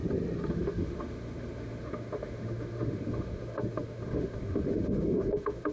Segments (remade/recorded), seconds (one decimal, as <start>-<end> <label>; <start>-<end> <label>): 0.0-0.5 recorded; 0.5-5.7 remade